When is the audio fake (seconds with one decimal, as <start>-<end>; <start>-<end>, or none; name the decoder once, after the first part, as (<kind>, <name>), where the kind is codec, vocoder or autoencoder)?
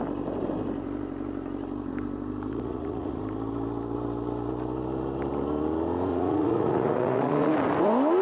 2.5-3.2 (vocoder, Vocos); 6.1-7.5